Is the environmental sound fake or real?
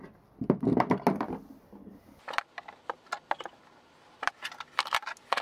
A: real